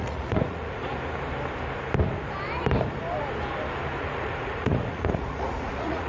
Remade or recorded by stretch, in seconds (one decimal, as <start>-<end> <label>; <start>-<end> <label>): 0.0-0.9 remade; 0.9-4.0 recorded; 4.0-6.1 remade